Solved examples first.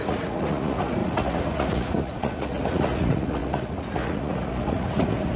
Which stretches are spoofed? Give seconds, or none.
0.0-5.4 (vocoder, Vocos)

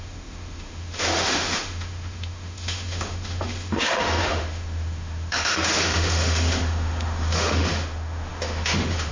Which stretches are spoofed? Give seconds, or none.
0.0-9.1 (autoencoder, DAC-VAE)

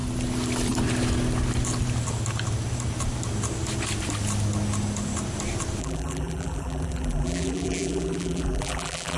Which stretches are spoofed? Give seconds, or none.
5.8-9.2 (vocoder, BigVGAN v2)